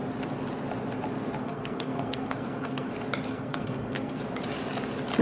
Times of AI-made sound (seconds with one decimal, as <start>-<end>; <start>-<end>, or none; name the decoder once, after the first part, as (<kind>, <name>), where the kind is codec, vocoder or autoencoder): 1.4-2.9 (codec, SNAC); 3.3-4.2